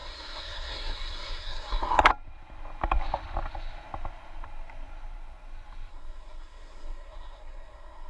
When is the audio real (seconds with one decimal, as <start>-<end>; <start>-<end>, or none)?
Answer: 2.1-5.9